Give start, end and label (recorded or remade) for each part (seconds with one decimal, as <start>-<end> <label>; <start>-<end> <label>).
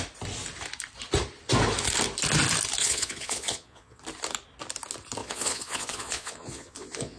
0.0-2.8 recorded; 2.8-4.0 remade; 4.0-5.2 recorded; 5.2-7.2 remade